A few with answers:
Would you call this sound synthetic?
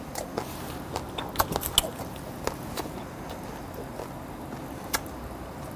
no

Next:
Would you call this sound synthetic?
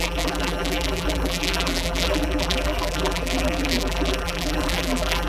yes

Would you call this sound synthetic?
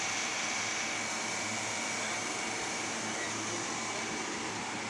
yes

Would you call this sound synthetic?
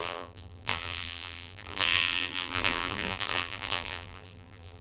yes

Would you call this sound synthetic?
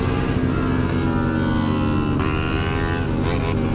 no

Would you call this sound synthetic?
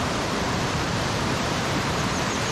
yes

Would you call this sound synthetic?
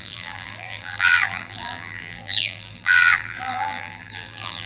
yes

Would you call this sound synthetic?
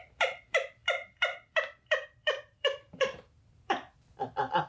yes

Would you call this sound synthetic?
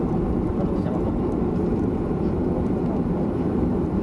yes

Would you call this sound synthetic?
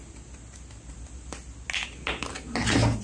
no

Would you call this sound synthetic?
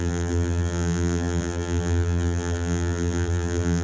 yes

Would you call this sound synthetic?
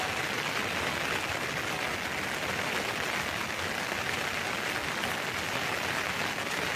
no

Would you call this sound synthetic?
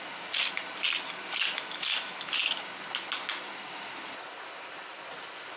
no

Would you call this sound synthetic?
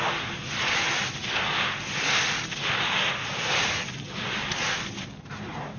no